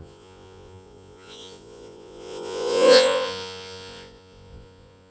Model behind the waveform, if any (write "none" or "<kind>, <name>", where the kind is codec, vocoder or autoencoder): vocoder, Vocos